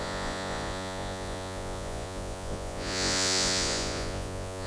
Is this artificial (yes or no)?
yes